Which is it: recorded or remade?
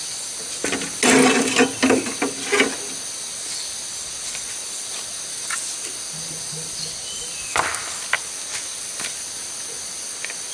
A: recorded